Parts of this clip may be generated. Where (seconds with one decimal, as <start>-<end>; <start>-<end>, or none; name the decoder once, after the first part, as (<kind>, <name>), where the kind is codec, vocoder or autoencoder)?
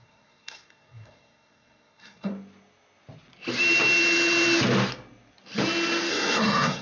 0.0-2.3 (codec, SNAC); 6.1-6.8